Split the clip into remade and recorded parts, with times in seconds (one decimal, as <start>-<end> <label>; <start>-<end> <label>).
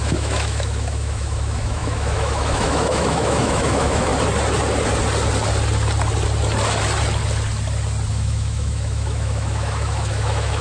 0.0-4.1 remade; 4.1-8.1 recorded; 8.1-10.6 remade